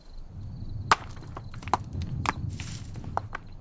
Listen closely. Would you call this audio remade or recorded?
recorded